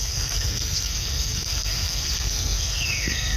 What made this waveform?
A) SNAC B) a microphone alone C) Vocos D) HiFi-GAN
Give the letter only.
A